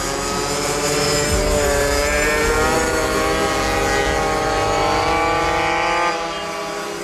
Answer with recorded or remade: recorded